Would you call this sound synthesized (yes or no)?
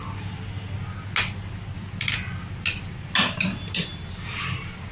no